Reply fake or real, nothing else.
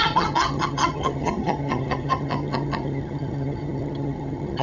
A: fake